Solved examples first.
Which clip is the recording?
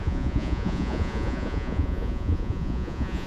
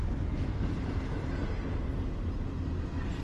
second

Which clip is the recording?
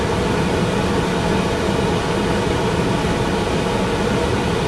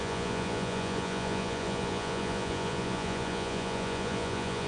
first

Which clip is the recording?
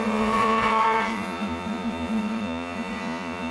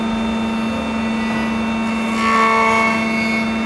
second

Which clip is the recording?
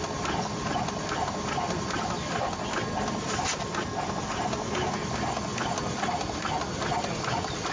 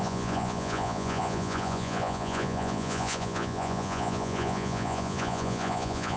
first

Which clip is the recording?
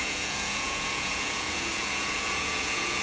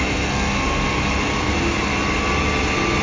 second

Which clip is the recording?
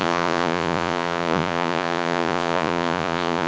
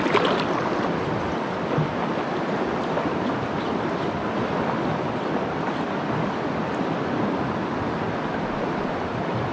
second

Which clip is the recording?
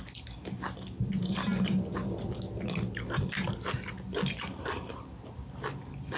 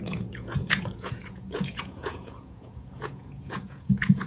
first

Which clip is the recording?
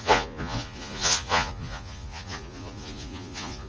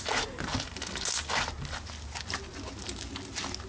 second